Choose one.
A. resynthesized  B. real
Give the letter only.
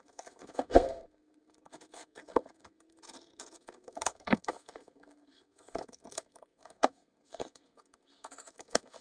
A